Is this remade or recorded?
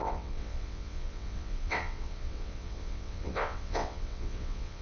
remade